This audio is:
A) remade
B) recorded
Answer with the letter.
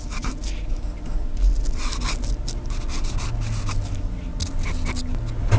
B